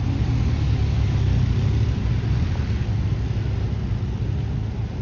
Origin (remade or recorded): recorded